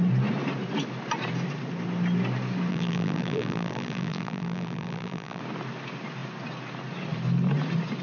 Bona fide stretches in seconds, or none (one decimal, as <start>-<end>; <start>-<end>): 0.0-2.7; 5.4-8.0